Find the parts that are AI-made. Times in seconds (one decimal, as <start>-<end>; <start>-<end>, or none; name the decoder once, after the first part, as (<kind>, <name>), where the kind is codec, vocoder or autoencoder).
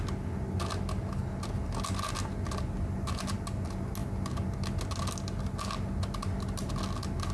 none